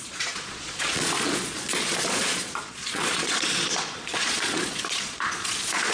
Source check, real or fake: fake